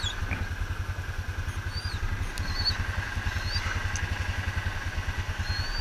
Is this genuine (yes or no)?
yes